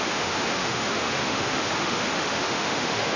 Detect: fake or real fake